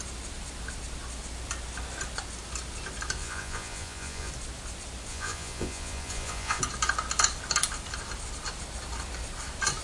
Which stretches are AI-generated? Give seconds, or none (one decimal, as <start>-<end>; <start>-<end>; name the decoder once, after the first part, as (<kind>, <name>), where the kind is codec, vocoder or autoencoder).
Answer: 3.2-4.3 (vocoder, Vocos); 5.1-6.6